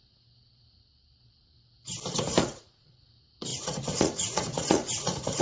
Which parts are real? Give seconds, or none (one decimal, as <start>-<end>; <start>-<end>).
0.0-2.4; 3.0-3.5